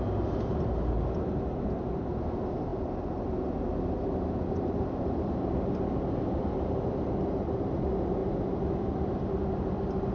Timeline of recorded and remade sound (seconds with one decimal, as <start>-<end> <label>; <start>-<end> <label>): 0.0-10.1 recorded